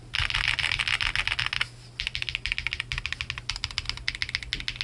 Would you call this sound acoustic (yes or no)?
yes